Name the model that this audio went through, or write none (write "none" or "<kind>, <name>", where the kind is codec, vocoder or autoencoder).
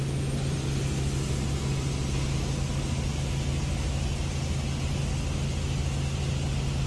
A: none